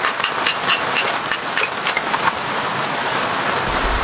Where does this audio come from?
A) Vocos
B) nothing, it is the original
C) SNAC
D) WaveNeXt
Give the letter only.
B